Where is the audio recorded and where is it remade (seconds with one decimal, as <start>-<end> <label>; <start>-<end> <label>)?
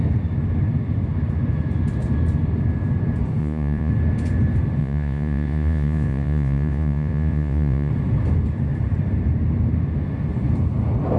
0.0-3.4 recorded; 3.4-3.9 remade; 3.9-4.8 recorded; 4.8-7.9 remade; 7.9-11.2 recorded